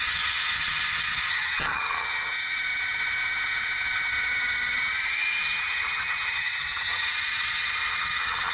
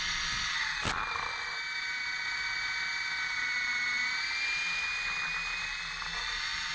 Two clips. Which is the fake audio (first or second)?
first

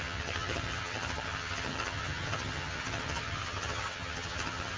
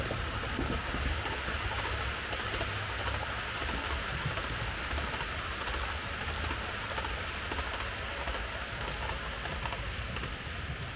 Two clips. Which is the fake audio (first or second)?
first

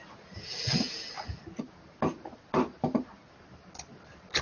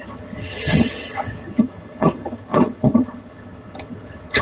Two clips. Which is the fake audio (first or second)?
second